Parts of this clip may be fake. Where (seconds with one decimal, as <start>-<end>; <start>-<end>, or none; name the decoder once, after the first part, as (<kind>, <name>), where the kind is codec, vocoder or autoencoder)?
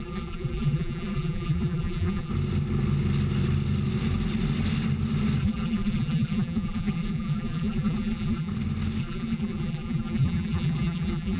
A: 0.0-2.3 (vocoder, BigVGAN v2); 5.4-8.5; 9.0-11.4